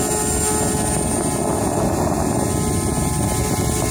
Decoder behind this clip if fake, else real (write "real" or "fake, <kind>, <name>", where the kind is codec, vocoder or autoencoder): real